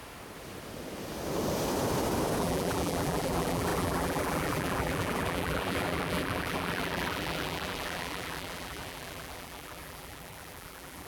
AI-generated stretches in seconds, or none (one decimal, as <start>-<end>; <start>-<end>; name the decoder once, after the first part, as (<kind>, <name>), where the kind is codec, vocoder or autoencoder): 2.4-11.1 (vocoder, BigVGAN v2)